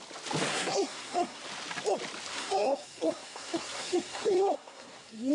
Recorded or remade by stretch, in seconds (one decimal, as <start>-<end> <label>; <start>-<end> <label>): 0.0-0.5 recorded; 0.5-1.4 remade; 1.4-2.3 recorded; 2.3-5.3 remade